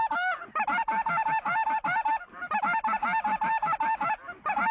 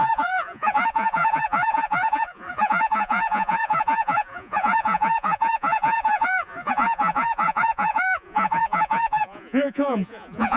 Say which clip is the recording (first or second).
first